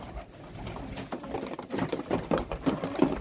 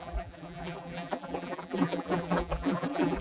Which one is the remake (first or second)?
second